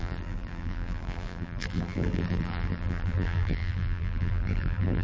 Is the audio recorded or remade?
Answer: remade